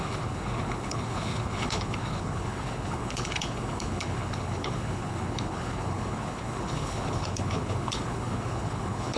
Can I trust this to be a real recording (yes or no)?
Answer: no